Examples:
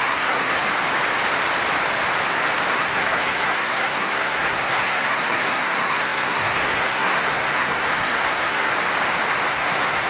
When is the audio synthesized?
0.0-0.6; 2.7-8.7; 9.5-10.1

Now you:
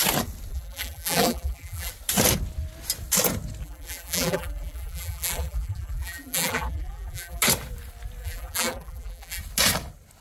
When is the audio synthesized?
0.5-1.9; 3.6-7.4; 8.2-9.4